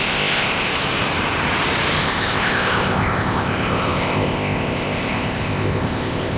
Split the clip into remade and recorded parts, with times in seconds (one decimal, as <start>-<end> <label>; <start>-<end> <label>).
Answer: 0.0-0.7 remade; 0.7-2.0 recorded; 2.0-6.4 remade